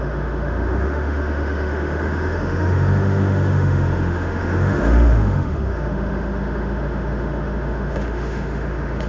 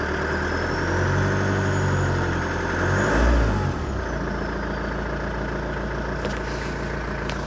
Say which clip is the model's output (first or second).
first